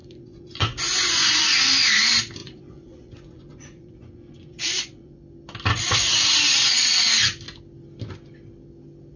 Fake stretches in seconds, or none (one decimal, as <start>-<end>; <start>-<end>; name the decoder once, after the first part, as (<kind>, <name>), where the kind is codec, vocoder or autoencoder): 0.0-1.4 (vocoder, Vocos); 2.4-5.2